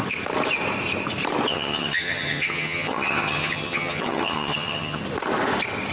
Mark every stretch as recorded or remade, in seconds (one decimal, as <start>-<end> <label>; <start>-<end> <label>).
0.0-1.5 recorded; 1.5-5.0 remade; 5.0-5.9 recorded